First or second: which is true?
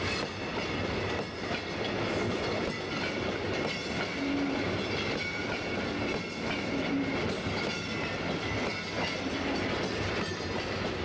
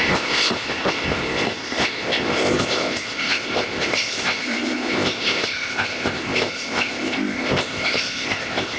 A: first